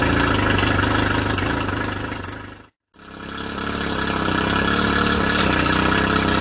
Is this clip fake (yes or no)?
no